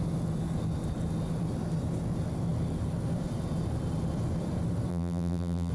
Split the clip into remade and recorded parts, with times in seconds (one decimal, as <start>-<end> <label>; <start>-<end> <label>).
0.0-4.9 recorded; 4.9-5.7 remade